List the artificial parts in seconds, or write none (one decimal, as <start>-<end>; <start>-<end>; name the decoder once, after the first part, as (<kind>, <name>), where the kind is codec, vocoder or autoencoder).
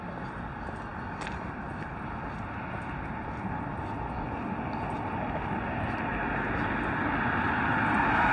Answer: none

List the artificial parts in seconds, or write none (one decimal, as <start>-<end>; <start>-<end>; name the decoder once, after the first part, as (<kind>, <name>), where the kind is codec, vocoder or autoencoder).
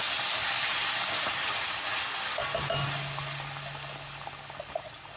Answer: none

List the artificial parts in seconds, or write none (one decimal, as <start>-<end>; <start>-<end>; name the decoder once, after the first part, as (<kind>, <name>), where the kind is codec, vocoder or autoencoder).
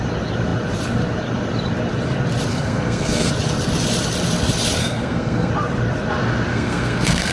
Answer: 2.5-3.3 (codec, SNAC); 4.8-5.5; 6.5-7.3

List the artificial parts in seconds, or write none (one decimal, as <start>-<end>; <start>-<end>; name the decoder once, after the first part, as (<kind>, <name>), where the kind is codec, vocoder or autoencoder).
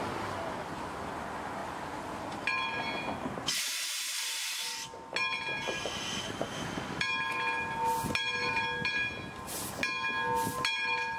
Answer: none